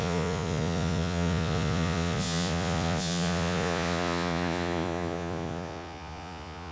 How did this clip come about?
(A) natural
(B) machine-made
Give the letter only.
B